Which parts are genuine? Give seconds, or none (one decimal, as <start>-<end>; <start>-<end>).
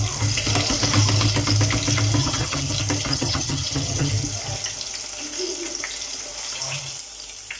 0.0-2.2; 2.7-3.1; 4.1-7.6